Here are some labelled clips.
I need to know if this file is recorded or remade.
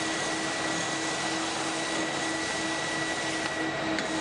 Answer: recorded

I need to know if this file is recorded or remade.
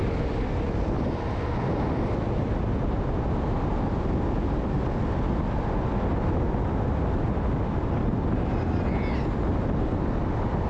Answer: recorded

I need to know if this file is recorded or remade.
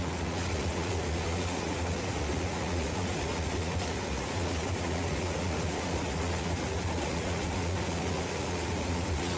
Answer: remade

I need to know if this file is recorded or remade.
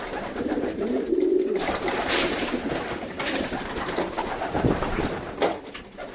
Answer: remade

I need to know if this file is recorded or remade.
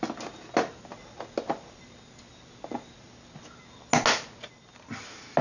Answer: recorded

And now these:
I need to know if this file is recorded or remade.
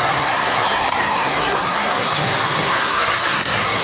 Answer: remade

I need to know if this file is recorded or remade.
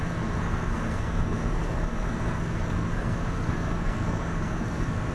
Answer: remade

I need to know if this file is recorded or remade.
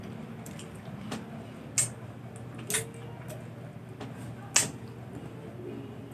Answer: recorded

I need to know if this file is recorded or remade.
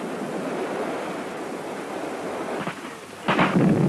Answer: recorded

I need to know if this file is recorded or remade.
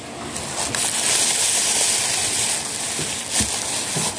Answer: recorded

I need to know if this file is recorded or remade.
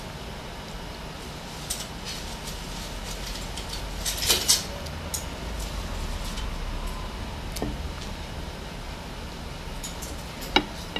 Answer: recorded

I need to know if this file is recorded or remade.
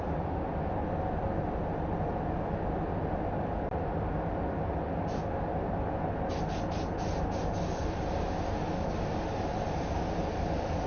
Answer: recorded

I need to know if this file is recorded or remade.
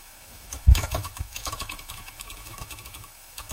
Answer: remade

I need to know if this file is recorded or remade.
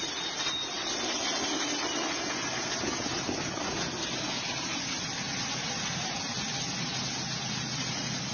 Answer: recorded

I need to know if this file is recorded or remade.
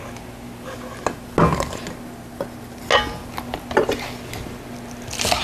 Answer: recorded